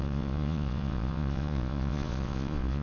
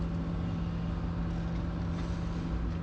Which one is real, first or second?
second